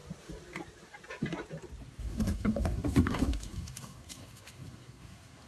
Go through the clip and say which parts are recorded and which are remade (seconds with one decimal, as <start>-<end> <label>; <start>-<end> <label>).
0.0-2.0 recorded; 2.0-5.5 remade

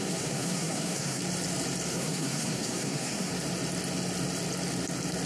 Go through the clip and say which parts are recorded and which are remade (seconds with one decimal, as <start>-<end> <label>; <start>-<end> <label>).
0.0-1.2 remade; 1.2-1.9 recorded; 1.9-3.3 remade; 3.3-5.3 recorded

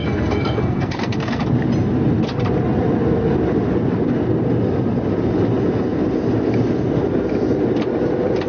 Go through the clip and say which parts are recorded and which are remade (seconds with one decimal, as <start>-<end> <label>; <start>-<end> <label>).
0.0-1.4 remade; 1.4-8.5 recorded

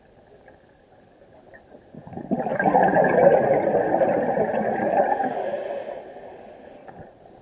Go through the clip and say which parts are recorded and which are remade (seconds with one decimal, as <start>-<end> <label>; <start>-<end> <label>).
0.0-7.4 recorded

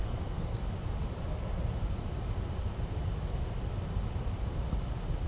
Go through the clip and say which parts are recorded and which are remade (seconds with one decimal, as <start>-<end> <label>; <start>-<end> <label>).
0.0-0.6 remade; 0.6-5.3 recorded

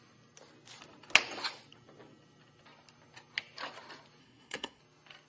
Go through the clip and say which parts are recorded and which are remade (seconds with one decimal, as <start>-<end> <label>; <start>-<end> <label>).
0.0-4.2 recorded; 4.2-4.8 remade; 4.8-5.3 recorded

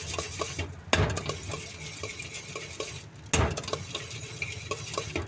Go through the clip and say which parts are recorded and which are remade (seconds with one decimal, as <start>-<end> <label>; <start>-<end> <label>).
0.0-5.3 recorded